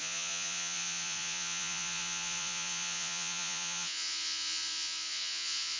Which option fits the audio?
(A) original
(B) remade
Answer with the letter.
B